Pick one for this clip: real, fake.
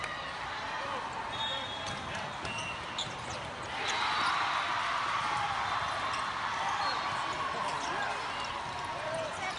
real